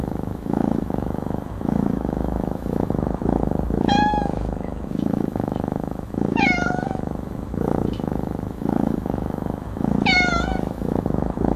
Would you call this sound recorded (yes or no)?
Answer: no